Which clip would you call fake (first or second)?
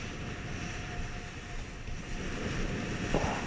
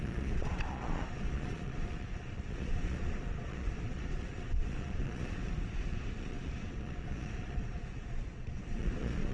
second